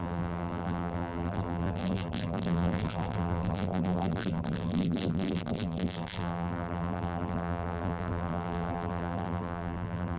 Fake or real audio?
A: fake